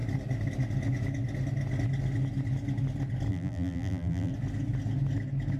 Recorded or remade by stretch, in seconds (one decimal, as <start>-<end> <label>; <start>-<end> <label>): 0.0-3.3 recorded; 3.3-4.3 remade; 4.3-5.6 recorded